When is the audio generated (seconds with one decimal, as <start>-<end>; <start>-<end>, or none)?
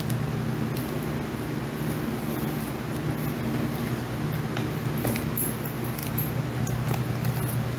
none